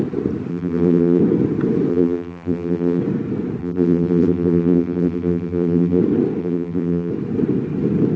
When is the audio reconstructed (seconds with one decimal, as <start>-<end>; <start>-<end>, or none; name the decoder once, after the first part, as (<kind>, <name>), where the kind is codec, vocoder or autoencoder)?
0.5-1.2 (vocoder, BigVGAN v2); 1.9-3.0; 3.6-6.0; 6.4-7.1